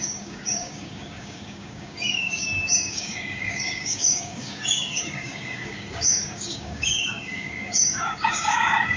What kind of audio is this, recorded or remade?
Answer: remade